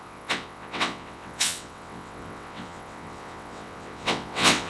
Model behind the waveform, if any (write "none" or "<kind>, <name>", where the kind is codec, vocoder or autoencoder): vocoder, WaveNeXt